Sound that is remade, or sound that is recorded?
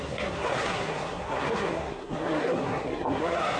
remade